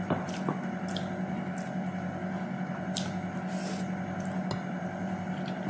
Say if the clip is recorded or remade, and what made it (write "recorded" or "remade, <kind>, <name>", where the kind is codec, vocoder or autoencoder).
recorded